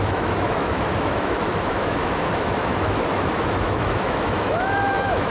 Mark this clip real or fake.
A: fake